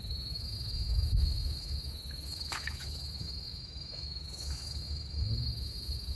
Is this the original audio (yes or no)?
no